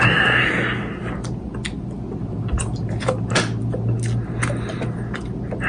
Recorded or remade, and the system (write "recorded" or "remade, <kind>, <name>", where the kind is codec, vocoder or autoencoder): recorded